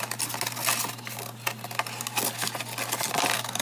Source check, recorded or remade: recorded